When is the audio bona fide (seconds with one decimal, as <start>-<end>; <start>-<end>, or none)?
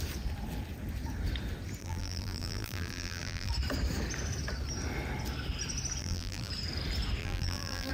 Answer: 0.0-1.8; 3.5-6.0; 6.5-7.2